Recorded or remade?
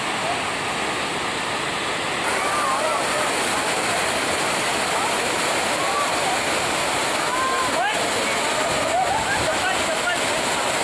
recorded